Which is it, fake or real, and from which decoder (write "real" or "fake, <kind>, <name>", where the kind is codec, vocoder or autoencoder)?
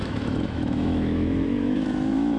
fake, autoencoder, DAC-VAE